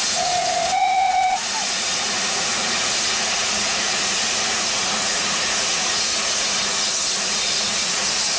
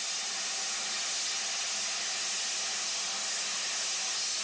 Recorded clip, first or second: second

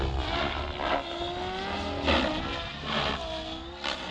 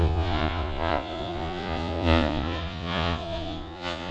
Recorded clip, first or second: first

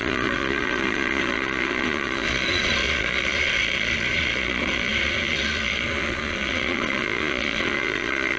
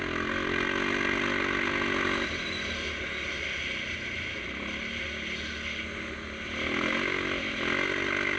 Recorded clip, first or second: second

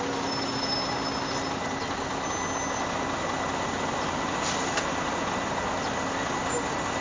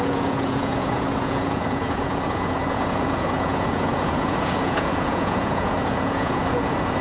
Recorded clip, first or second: first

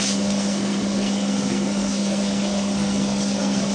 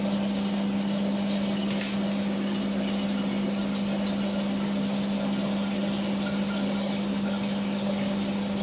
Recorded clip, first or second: second